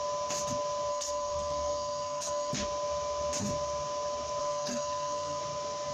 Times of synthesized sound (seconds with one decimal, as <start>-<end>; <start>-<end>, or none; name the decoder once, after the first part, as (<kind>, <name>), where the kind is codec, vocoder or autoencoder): 0.9-2.5 (codec, SNAC); 4.4-5.4